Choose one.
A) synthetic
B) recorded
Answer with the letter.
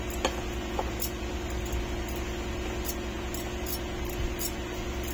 B